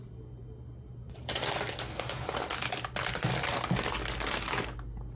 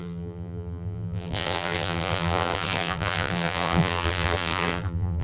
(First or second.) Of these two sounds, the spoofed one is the second